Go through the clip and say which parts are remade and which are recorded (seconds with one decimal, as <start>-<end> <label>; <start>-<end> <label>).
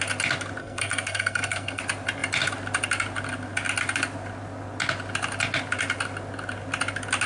0.0-0.6 recorded; 0.6-1.8 remade; 1.8-7.3 recorded